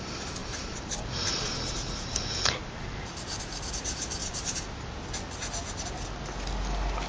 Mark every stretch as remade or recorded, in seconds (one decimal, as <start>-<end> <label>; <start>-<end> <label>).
0.0-0.4 recorded; 0.4-3.0 remade; 3.0-4.2 recorded; 4.2-4.9 remade; 4.9-7.1 recorded